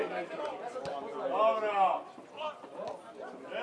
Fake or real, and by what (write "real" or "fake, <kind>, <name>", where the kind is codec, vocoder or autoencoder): real